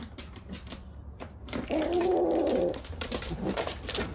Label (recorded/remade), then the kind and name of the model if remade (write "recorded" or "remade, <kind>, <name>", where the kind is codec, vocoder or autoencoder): remade, vocoder, BigVGAN v2